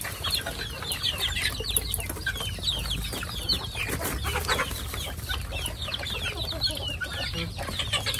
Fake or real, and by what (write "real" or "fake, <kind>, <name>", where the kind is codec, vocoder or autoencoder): real